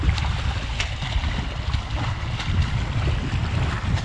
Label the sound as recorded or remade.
recorded